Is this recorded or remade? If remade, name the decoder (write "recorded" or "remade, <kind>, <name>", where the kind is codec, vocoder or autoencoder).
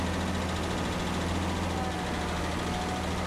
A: recorded